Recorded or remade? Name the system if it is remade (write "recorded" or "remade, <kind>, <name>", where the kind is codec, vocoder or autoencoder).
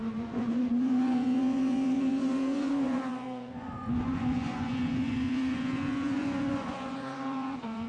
remade, vocoder, Vocos